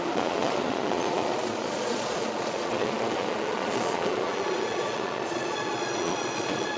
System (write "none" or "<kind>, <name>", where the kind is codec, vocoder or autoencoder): vocoder, Vocos